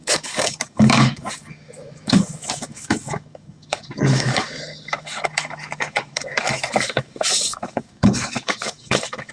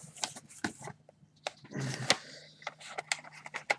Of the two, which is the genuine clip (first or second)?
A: second